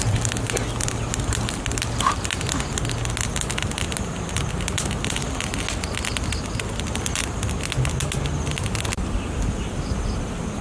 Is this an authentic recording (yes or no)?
yes